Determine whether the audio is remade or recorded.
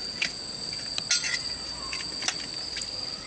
recorded